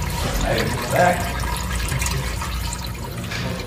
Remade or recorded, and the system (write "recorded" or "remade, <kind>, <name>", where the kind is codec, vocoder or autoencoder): remade, vocoder, BigVGAN v2